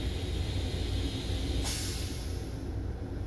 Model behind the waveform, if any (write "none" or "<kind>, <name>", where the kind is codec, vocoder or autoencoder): none